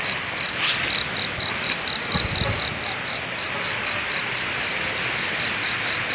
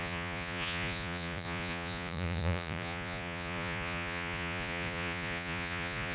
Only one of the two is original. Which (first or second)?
first